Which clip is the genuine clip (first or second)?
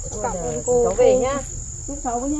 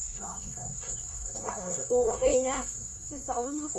first